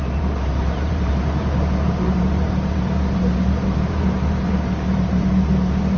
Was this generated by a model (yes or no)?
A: yes